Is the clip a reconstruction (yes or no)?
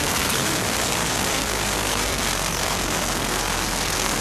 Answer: yes